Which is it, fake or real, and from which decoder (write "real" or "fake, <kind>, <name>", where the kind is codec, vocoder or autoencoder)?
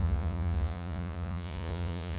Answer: fake, vocoder, Vocos